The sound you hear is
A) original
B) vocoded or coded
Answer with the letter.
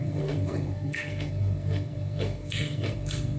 B